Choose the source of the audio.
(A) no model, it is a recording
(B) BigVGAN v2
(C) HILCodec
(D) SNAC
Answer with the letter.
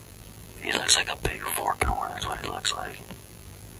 B